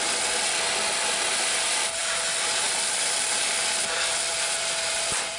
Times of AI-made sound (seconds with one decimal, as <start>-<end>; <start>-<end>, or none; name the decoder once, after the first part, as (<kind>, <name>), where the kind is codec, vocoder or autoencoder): 0.0-5.4 (vocoder, BigVGAN v2)